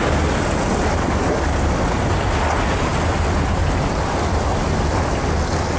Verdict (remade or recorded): recorded